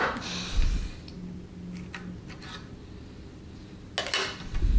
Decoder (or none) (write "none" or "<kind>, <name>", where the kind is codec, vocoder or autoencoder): none